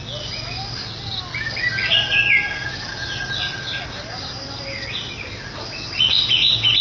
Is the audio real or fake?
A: real